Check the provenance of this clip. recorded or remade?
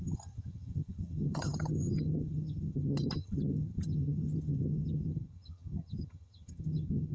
remade